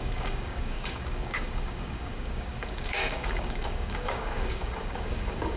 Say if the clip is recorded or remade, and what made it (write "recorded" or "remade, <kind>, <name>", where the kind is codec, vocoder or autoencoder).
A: remade, codec, DAC